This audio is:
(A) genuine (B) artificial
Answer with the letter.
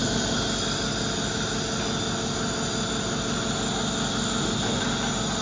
A